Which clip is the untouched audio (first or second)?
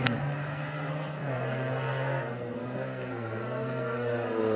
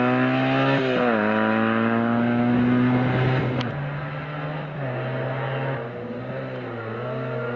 second